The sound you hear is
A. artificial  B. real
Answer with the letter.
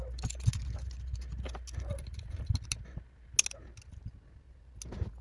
B